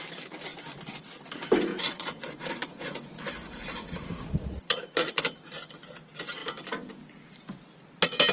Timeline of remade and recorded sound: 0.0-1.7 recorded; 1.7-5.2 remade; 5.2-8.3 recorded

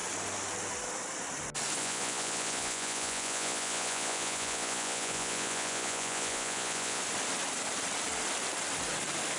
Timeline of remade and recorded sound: 0.0-1.8 recorded; 1.8-7.0 remade; 7.0-9.4 recorded